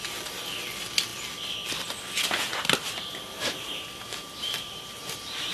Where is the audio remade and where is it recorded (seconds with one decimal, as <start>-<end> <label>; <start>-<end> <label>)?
0.0-2.5 recorded; 2.5-5.5 remade